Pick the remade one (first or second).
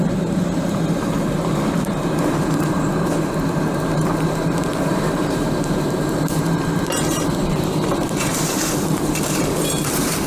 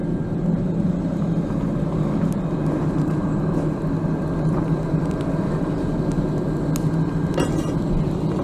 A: first